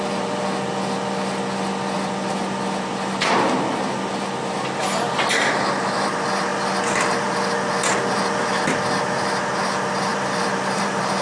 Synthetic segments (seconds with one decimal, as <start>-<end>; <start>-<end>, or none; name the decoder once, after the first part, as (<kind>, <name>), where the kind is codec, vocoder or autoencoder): 5.3-6.1 (vocoder, BigVGAN v2); 10.1-11.2